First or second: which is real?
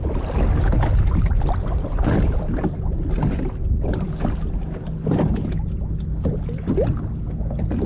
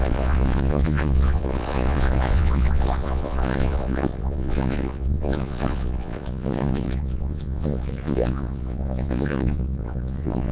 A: first